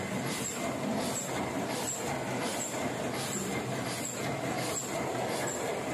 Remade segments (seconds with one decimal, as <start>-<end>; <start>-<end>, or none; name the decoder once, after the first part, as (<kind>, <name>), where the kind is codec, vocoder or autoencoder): none